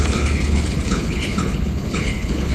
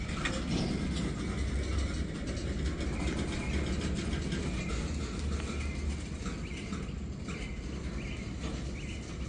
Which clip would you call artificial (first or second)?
first